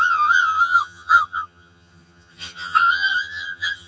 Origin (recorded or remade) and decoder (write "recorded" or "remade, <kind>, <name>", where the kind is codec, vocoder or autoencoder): remade, vocoder, HiFi-GAN